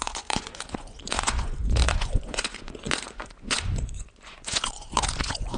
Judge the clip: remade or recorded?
remade